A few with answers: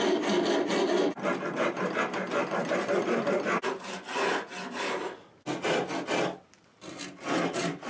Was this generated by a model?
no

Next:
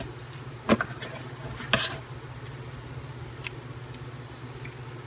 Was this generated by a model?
no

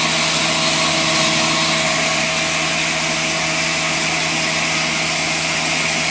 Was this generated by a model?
no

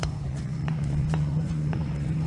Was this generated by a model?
yes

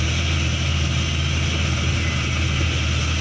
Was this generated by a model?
no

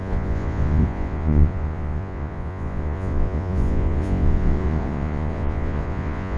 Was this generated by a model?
yes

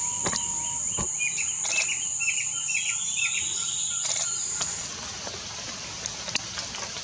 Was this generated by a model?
no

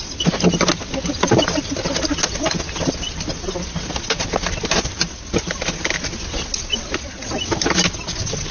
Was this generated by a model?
no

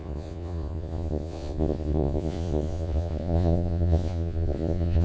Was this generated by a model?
yes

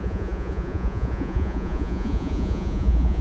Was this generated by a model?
yes